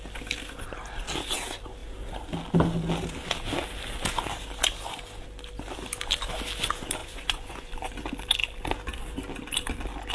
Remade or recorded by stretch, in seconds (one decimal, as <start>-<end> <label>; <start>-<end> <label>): 0.0-7.0 recorded; 7.0-7.7 remade; 7.7-10.1 recorded